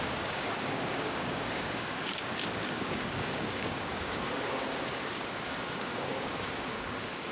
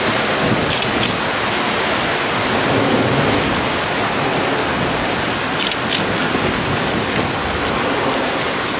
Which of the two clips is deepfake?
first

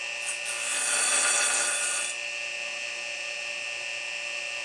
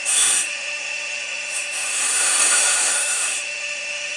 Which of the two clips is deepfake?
second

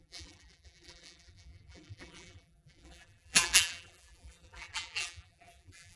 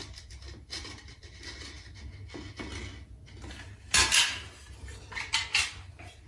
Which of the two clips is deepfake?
first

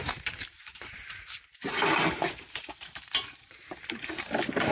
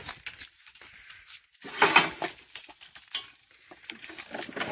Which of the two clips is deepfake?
first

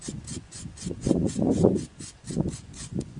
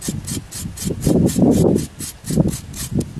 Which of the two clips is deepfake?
first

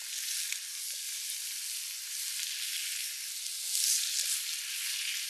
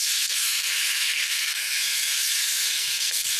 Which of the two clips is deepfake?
second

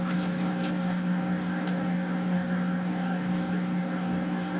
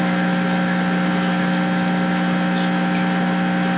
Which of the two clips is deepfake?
first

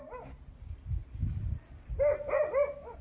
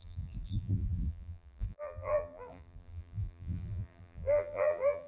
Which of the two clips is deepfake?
second